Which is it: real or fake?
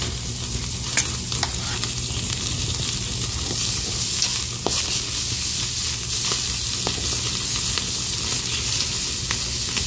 real